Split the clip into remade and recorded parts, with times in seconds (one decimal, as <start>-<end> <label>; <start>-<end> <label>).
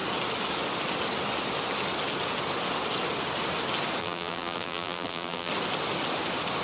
0.0-4.0 recorded; 4.0-5.5 remade; 5.5-6.6 recorded